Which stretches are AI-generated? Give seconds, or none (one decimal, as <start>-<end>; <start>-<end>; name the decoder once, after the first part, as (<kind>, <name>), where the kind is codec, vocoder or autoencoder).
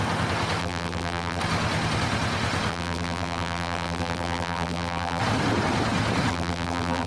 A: 0.6-1.4 (vocoder, BigVGAN v2); 2.7-5.2; 6.3-7.1